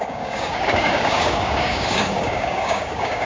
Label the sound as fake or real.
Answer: fake